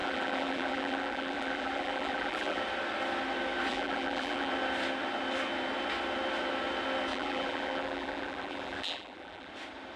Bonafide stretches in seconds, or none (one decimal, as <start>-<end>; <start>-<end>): 2.6-3.7; 4.5-7.1; 9.5-10.0